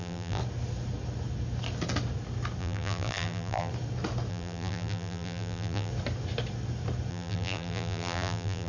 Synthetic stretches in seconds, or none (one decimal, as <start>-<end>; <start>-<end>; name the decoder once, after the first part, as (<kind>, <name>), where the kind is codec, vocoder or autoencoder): 0.0-0.4 (vocoder, BigVGAN v2); 2.6-3.7; 4.3-5.9; 7.1-8.7